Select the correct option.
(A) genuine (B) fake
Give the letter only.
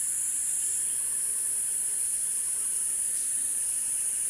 A